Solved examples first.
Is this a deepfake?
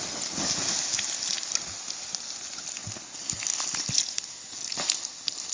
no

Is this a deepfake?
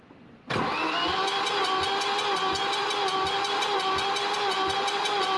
no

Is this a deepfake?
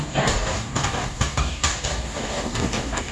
yes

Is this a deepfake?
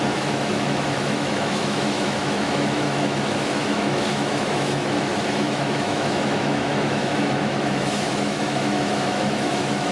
yes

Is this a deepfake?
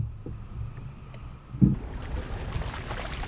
no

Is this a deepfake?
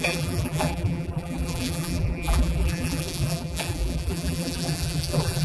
yes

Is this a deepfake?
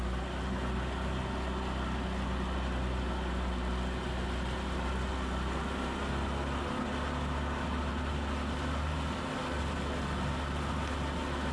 no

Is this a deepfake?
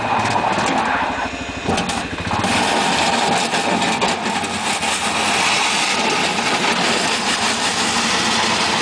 no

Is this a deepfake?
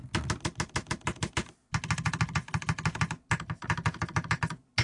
no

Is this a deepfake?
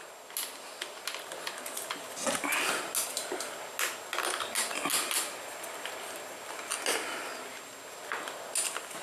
no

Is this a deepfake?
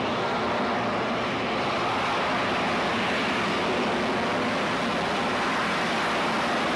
no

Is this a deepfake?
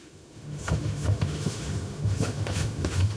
yes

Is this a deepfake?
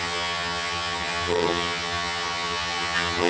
yes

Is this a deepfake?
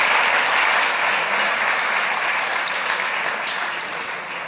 no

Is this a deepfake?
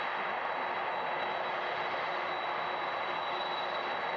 no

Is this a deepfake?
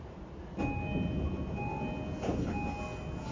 no